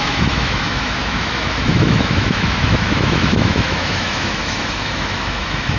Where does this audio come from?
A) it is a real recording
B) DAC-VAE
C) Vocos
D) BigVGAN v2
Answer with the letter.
B